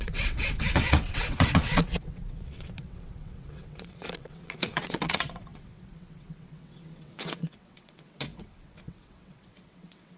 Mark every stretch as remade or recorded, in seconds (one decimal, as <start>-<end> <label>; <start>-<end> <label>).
0.0-10.2 remade